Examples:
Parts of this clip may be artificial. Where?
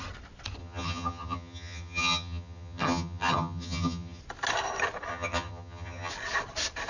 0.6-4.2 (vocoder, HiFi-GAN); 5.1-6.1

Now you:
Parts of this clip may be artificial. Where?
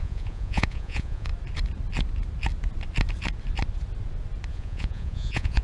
0.0-1.3 (vocoder, Vocos); 4.5-5.6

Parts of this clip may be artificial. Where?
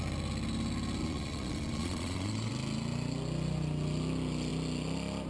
1.0-2.5 (vocoder, Vocos)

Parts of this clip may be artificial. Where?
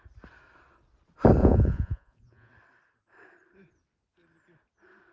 1.4-2.5 (vocoder, Vocos)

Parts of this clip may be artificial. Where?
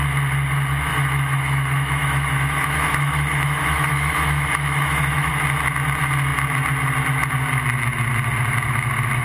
0.9-5.3 (autoencoder, DAC-VAE)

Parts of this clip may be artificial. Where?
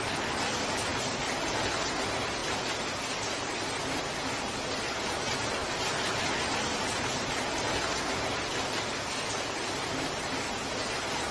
2.4-5.1 (vocoder, BigVGAN v2); 5.6-6.8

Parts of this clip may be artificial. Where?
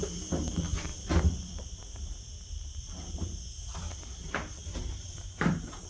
0.0-5.9 (vocoder, BigVGAN v2)